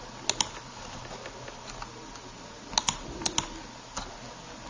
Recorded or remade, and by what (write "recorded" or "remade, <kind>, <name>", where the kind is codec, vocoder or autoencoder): recorded